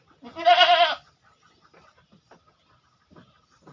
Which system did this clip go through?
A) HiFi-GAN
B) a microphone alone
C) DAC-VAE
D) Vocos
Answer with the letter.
B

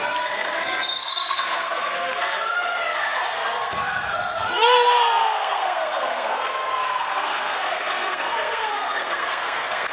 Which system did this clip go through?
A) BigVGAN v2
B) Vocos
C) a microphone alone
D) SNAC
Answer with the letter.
D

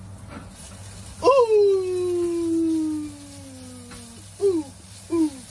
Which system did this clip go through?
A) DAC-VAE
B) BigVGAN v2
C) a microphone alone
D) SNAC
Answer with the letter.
C